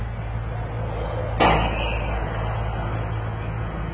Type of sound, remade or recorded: recorded